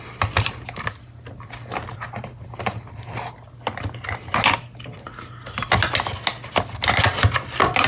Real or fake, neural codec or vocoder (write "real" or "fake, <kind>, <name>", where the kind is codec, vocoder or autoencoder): real